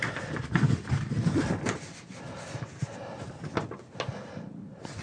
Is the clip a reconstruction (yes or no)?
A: no